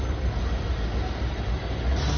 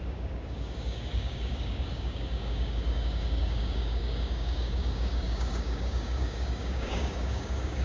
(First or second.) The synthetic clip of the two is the second